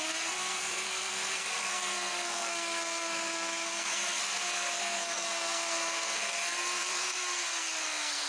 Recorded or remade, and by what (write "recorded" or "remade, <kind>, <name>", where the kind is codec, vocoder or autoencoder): remade, codec, SNAC